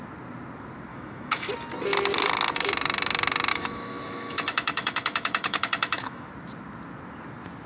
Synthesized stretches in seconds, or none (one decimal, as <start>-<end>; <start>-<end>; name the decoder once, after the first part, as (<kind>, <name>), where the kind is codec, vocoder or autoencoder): 0.9-1.5 (autoencoder, DAC-VAE); 3.5-6.3